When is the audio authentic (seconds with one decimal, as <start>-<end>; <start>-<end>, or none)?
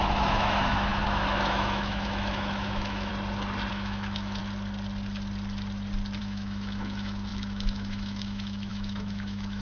3.1-3.7; 4.4-6.2